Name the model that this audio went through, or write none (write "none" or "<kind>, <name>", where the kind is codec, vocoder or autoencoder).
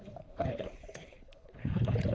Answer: codec, HILCodec